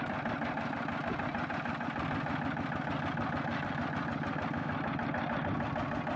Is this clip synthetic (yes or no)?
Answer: no